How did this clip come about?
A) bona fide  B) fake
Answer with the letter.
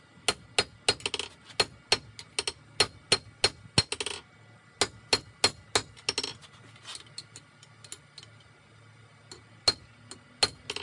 A